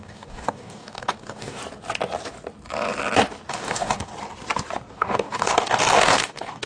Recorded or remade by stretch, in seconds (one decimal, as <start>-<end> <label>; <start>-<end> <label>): 0.0-1.6 remade; 1.6-3.5 recorded; 3.5-4.1 remade; 4.1-4.9 recorded; 4.9-6.7 remade